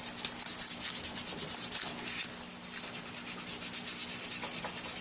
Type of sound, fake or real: real